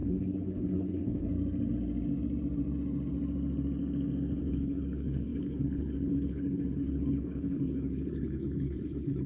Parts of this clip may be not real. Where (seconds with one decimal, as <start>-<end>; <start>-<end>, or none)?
0.0-1.3; 4.4-9.3